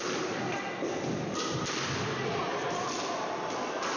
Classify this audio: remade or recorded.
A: recorded